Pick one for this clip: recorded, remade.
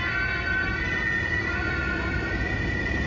recorded